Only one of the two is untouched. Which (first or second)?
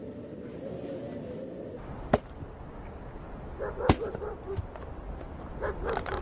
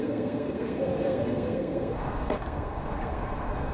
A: first